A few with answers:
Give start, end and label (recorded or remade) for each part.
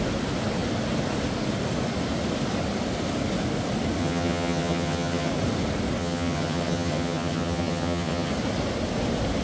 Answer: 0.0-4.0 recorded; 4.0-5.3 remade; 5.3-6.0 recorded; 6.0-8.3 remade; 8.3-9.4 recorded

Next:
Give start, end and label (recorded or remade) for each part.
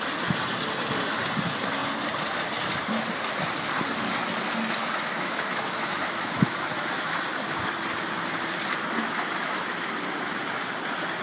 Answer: 0.0-4.8 recorded; 4.8-7.3 remade; 7.3-9.0 recorded; 9.0-9.7 remade; 9.7-11.2 recorded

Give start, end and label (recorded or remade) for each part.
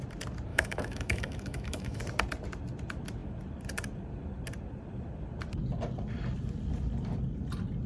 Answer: 0.0-0.5 recorded; 0.5-2.0 remade; 2.0-7.9 recorded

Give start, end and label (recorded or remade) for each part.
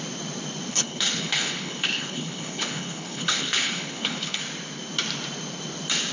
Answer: 0.0-0.7 recorded; 0.7-4.4 remade; 4.4-6.1 recorded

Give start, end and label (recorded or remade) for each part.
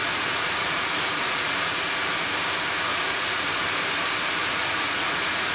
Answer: 0.0-1.8 remade; 1.8-2.9 recorded; 2.9-3.5 remade; 3.5-4.5 recorded; 4.5-5.5 remade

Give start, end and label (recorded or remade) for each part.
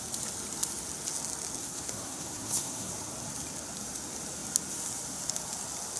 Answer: 0.0-1.6 recorded; 1.6-2.9 remade; 2.9-6.0 recorded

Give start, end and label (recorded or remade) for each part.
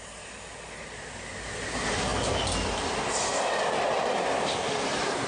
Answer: 0.0-5.3 recorded